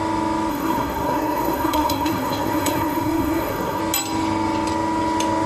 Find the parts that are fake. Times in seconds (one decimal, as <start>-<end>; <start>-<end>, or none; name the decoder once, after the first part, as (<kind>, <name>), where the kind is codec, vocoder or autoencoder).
0.5-3.8 (codec, SNAC)